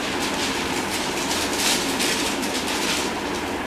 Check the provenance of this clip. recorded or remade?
recorded